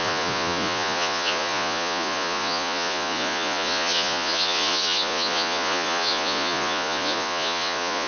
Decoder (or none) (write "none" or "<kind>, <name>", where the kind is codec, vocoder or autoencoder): vocoder, Vocos